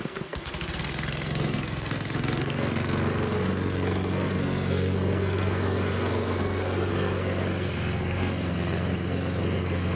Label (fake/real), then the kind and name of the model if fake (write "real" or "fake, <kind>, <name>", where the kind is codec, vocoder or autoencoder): fake, codec, SNAC